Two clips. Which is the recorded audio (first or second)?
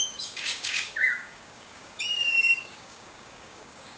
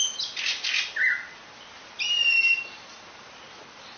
second